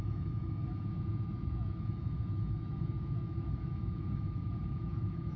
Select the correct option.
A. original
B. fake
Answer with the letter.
B